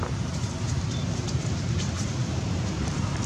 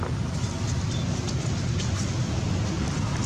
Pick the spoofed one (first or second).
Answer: first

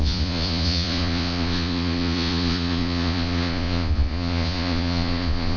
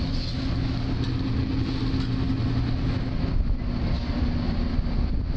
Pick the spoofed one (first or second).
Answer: first